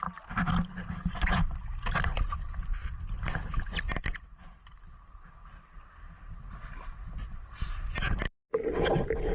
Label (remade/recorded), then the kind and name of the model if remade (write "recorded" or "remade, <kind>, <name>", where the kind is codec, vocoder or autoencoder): recorded